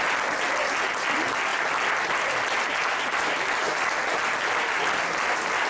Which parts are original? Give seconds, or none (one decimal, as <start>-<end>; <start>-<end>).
0.0-5.7